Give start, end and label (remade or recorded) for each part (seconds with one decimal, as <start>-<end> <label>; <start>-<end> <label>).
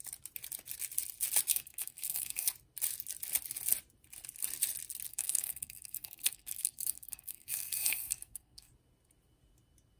0.0-1.5 recorded; 1.5-2.5 remade; 2.5-5.1 recorded; 5.1-8.7 remade; 8.7-10.0 recorded